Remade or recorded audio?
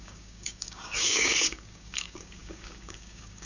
remade